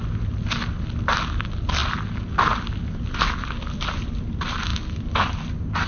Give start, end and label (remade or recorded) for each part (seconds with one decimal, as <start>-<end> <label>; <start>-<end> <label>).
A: 0.0-5.9 recorded